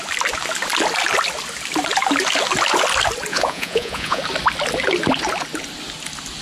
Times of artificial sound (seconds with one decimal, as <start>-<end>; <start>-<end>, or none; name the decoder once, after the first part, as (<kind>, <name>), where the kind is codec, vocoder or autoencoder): 3.3-4.2 (vocoder, Vocos)